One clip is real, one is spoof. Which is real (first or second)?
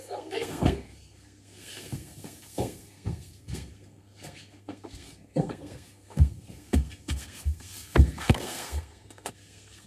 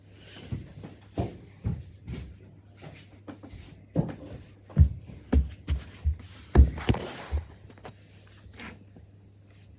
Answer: second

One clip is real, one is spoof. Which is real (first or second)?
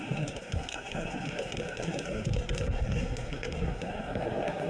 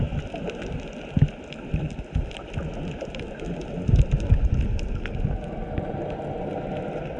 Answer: second